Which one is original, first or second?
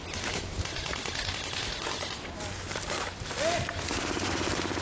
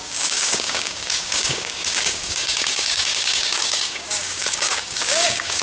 first